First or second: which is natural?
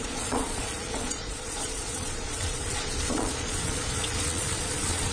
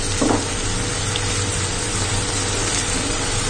second